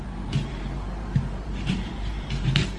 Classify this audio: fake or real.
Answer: fake